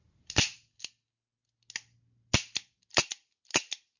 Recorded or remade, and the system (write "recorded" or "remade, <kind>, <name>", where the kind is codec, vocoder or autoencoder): recorded